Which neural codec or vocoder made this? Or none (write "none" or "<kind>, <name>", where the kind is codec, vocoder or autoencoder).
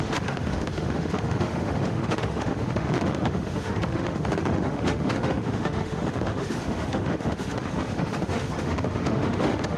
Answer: autoencoder, DAC-VAE